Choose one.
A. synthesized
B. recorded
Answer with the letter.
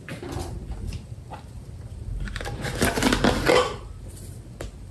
B